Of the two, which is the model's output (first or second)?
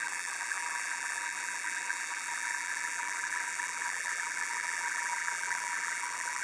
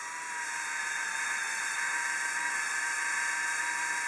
first